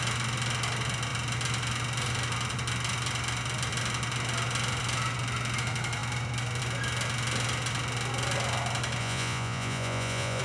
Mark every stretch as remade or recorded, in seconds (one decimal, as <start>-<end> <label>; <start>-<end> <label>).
0.0-9.0 recorded; 9.0-10.4 remade